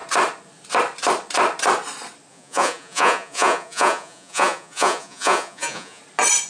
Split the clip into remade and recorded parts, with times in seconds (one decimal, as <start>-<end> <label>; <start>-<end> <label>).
0.0-2.3 recorded; 2.3-6.0 remade; 6.0-6.5 recorded